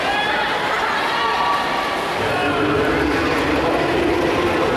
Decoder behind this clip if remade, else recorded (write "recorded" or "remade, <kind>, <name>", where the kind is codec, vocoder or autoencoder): recorded